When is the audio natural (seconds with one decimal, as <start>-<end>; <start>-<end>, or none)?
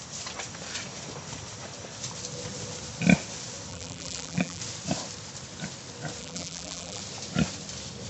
0.0-3.7; 4.6-6.2; 7.0-8.1